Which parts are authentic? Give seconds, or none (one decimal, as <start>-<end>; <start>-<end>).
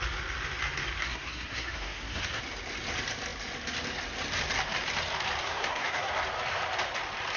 0.0-1.0; 2.4-5.4; 6.1-7.4